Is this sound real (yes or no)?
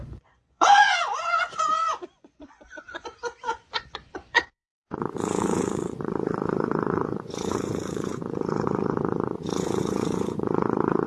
no